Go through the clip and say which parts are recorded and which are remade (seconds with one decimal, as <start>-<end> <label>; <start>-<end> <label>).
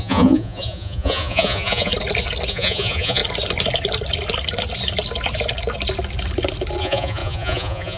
0.0-1.9 remade; 1.9-2.5 recorded; 2.5-3.2 remade; 3.2-6.8 recorded; 6.8-8.0 remade